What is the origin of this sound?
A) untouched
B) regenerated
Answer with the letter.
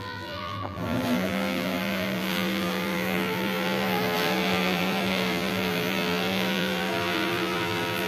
B